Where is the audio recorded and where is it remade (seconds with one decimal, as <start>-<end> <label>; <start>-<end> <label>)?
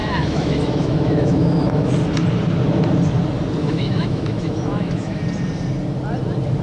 0.0-1.9 remade; 1.9-3.6 recorded; 3.6-5.2 remade; 5.2-6.6 recorded